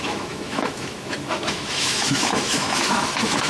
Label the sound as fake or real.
fake